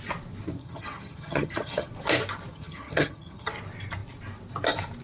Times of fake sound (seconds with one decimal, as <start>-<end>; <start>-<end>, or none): 0.6-1.9; 2.5-3.5